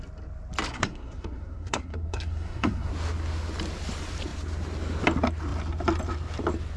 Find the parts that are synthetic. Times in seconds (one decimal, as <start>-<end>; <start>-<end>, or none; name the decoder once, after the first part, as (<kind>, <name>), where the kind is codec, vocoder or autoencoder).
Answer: 0.7-2.9 (codec, SNAC)